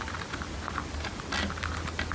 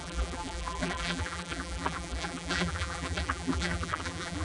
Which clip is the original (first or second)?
first